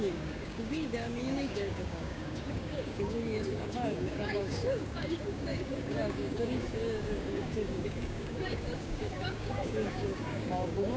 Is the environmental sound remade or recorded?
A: remade